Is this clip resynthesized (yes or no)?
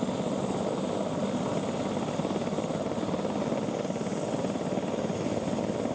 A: no